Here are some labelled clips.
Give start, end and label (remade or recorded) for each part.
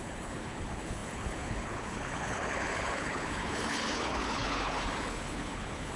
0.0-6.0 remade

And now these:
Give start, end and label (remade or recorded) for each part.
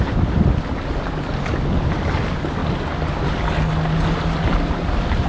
0.0-5.3 recorded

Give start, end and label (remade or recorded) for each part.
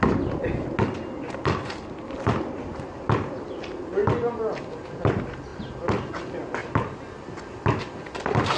0.0-8.6 recorded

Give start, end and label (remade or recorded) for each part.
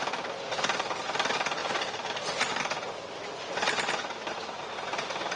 0.0-5.4 recorded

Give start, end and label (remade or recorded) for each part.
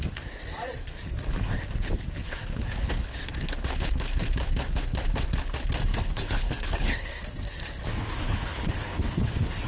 0.0-2.2 recorded; 2.2-2.9 remade; 2.9-5.9 recorded; 5.9-7.2 remade; 7.2-8.1 recorded; 8.1-9.7 remade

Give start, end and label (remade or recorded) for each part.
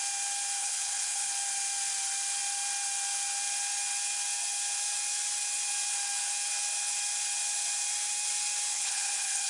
0.0-0.6 recorded; 0.6-1.3 remade; 1.3-8.7 recorded; 8.7-9.5 remade